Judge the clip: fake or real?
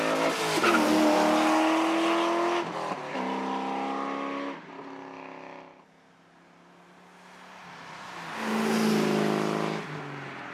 real